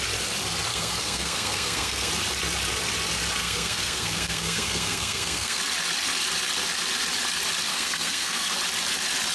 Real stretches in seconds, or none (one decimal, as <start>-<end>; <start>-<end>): 0.0-0.7; 2.1-3.4; 5.6-7.7; 8.5-9.3